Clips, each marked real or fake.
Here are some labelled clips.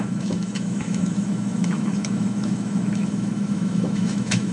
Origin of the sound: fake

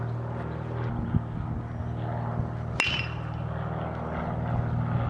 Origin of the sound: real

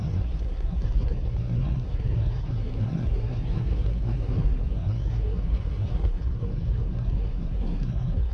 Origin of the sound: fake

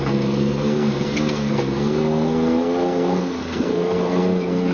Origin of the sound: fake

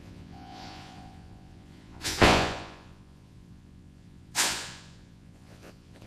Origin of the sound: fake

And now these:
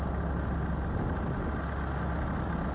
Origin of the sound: real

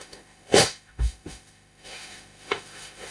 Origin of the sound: fake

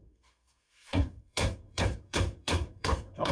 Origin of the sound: fake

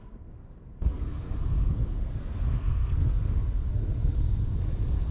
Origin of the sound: fake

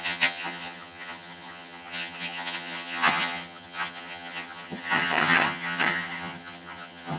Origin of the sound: fake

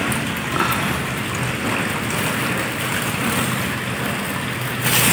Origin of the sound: real